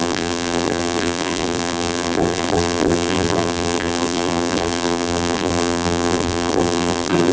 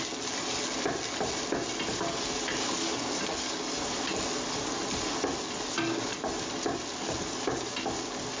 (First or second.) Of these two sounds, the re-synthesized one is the first